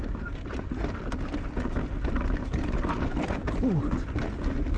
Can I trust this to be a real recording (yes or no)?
yes